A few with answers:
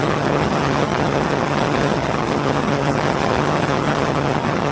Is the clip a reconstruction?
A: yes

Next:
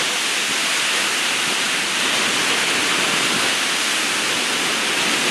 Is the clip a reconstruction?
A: no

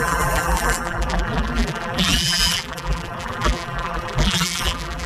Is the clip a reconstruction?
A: yes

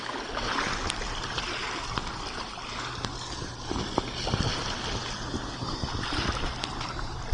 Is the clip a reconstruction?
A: no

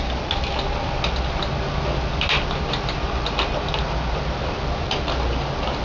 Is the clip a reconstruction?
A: no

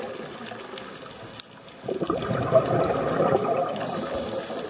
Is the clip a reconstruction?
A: yes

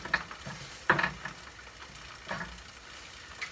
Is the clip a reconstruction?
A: no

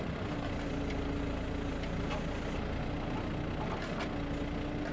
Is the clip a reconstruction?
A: no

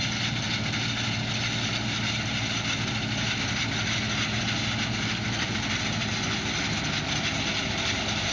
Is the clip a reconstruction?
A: no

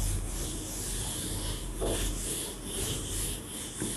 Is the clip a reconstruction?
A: no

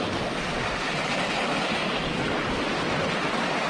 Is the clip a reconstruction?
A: no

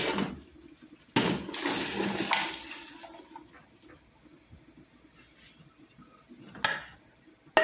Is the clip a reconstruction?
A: no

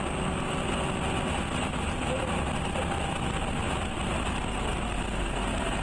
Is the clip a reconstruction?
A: no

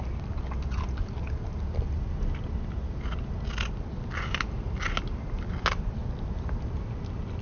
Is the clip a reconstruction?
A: no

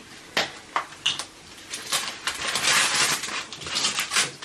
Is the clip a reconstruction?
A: no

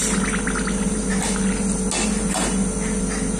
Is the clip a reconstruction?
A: no